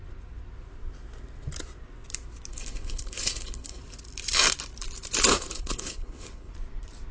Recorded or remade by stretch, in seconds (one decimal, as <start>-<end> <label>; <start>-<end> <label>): 0.0-2.5 recorded; 2.5-3.8 remade; 3.8-5.3 recorded; 5.3-6.5 remade; 6.5-7.1 recorded